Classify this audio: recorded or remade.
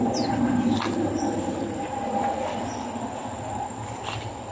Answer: recorded